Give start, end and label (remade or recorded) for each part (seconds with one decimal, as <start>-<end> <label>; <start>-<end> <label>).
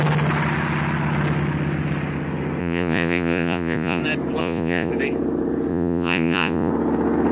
0.0-2.6 recorded; 2.6-4.0 remade; 4.0-4.4 recorded; 4.4-4.9 remade; 4.9-5.7 recorded; 5.7-6.7 remade; 6.7-7.3 recorded